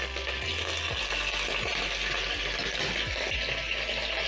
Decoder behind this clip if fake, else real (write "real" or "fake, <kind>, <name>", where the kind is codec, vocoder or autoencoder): real